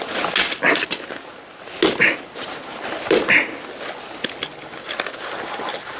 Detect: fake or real real